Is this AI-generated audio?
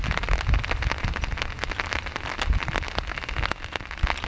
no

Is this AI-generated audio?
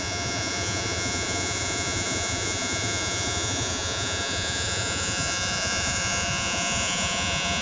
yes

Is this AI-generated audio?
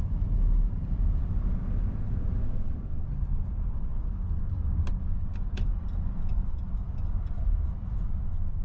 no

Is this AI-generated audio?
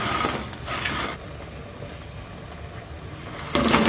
no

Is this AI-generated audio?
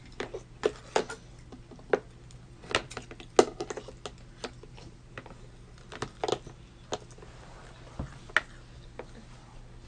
no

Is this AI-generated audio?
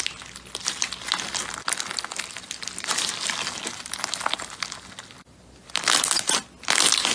no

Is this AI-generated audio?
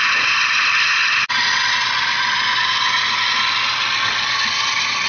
no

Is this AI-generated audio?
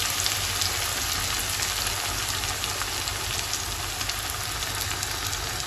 no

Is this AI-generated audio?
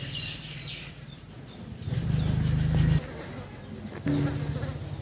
no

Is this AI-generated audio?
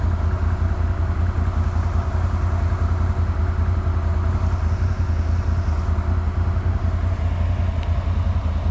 no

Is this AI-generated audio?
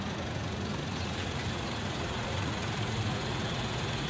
yes